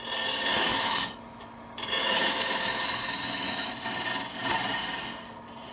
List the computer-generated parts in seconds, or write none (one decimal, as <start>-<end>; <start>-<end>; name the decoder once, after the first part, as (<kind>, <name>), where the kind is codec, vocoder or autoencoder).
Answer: 0.5-3.7 (autoencoder, DAC-VAE)